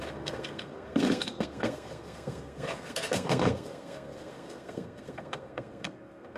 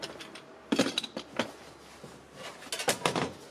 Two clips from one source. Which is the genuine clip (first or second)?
second